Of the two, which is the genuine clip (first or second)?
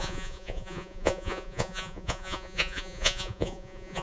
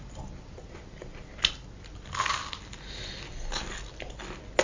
second